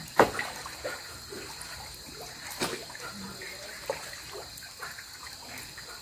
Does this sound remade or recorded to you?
remade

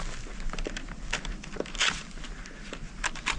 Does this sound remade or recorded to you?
recorded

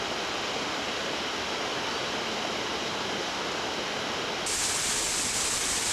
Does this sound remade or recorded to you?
recorded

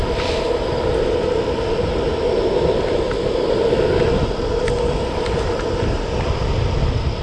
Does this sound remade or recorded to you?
recorded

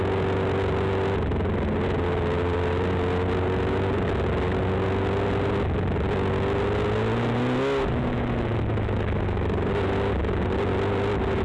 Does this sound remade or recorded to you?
recorded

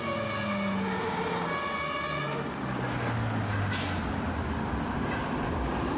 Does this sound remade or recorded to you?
recorded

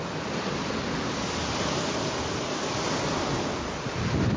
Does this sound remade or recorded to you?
remade